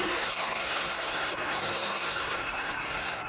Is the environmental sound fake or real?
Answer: fake